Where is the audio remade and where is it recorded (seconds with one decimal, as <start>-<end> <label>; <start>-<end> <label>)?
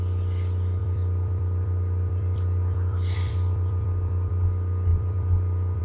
0.0-0.8 recorded; 0.8-4.3 remade; 4.3-4.9 recorded; 4.9-5.8 remade